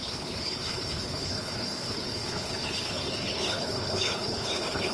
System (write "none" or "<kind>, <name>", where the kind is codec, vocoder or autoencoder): codec, HILCodec